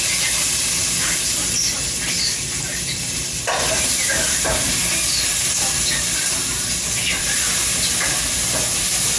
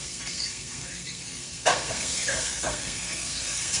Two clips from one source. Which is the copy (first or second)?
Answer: second